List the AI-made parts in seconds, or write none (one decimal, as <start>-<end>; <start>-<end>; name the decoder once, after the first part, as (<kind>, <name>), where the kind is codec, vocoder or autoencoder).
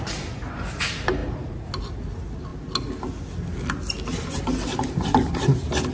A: none